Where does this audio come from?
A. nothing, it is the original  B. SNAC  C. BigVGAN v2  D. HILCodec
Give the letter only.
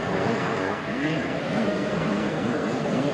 B